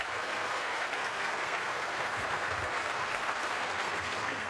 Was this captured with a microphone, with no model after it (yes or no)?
no